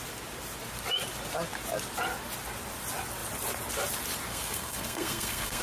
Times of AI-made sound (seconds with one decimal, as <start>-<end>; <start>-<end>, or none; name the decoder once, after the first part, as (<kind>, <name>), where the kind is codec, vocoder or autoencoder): 4.3-5.6 (codec, SNAC)